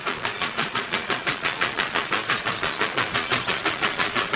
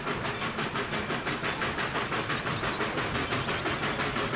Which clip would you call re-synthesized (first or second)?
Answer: first